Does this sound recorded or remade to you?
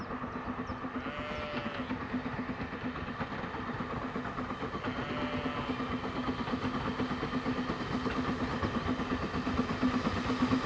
recorded